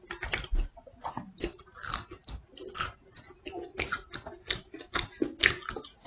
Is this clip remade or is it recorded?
recorded